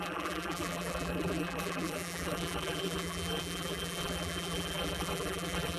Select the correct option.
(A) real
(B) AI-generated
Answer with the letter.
B